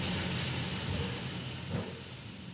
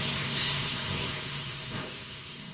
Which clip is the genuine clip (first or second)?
first